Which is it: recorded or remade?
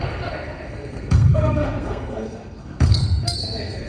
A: remade